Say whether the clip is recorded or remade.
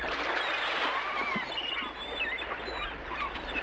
recorded